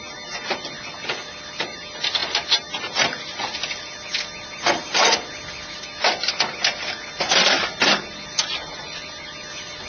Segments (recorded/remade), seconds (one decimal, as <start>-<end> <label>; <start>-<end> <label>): 0.0-9.9 recorded